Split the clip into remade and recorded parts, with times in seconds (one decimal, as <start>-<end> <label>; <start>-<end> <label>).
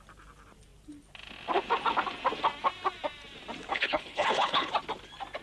0.0-3.7 recorded; 3.7-4.7 remade; 4.7-5.4 recorded